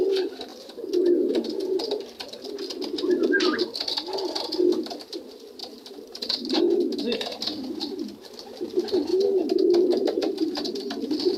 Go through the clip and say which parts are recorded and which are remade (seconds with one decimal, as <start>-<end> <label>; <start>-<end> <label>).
0.0-5.6 recorded; 5.6-6.6 remade; 6.6-9.1 recorded; 9.1-10.7 remade; 10.7-11.4 recorded